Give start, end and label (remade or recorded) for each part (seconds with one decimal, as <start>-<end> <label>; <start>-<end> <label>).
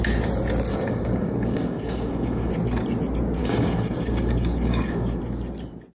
0.0-0.7 recorded; 0.7-2.5 remade; 2.5-3.4 recorded; 3.4-5.2 remade; 5.2-6.0 recorded